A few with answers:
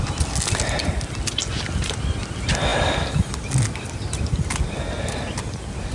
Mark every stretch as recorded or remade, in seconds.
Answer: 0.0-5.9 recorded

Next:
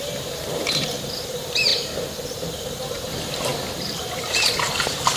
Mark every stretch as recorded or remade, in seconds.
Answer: 0.0-5.2 remade